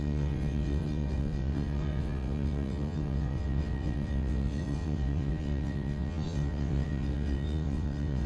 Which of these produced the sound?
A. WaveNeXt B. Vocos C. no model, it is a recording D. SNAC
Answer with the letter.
A